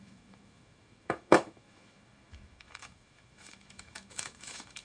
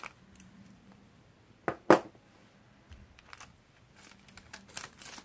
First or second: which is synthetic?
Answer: first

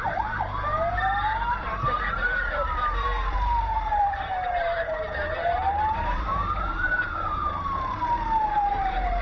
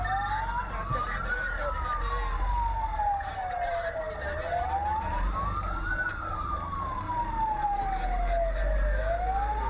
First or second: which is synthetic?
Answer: first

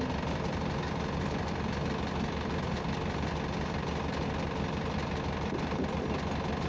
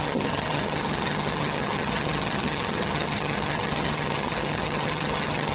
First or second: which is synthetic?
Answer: second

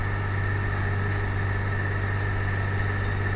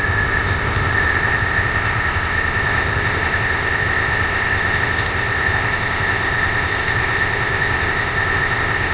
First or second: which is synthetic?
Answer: second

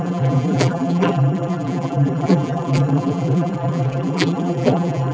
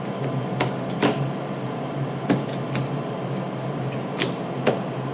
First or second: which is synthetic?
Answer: first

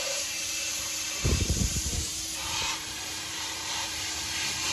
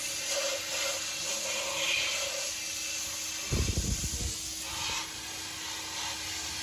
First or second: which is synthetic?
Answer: first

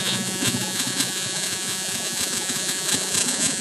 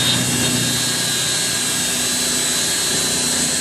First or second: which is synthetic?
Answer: first